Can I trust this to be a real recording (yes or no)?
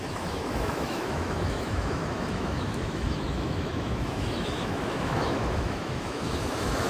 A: no